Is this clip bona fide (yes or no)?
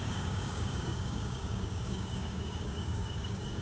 no